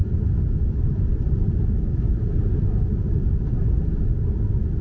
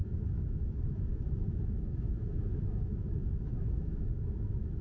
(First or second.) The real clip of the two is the first